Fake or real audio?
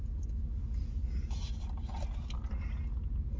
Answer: real